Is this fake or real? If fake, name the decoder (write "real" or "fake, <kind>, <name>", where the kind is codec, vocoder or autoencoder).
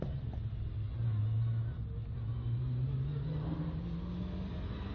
real